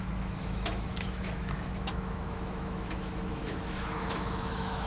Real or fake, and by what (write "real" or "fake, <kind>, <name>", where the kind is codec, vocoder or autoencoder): fake, autoencoder, DAC-VAE